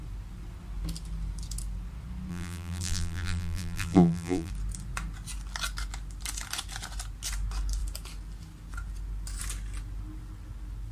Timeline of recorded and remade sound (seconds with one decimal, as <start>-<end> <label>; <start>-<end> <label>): 0.0-2.3 recorded; 2.3-4.5 remade; 4.5-10.9 recorded